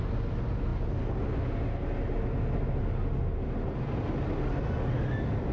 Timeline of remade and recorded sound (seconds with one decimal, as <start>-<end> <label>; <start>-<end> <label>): 0.0-5.5 recorded